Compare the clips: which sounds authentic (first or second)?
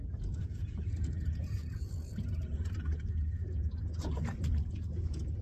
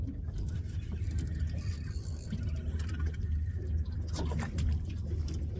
second